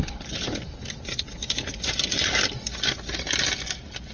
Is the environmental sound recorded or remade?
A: recorded